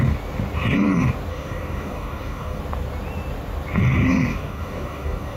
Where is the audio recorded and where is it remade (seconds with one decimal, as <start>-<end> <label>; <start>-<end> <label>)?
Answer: 0.0-1.3 recorded; 1.3-2.6 remade; 2.6-4.3 recorded; 4.3-5.4 remade